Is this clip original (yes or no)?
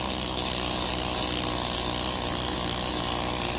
yes